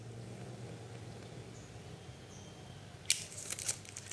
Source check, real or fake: real